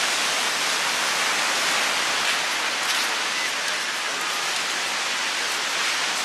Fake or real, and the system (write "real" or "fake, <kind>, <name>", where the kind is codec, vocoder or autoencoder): real